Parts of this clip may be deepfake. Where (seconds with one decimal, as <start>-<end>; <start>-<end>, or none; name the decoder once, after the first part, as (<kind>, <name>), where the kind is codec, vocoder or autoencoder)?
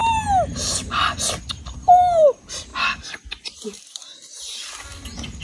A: 2.7-4.4 (vocoder, BigVGAN v2)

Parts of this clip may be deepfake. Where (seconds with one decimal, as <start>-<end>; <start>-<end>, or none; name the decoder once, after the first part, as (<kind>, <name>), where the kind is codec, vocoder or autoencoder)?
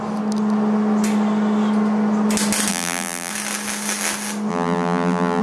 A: 2.7-3.3 (vocoder, BigVGAN v2); 4.5-5.4